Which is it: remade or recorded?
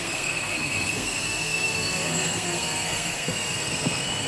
remade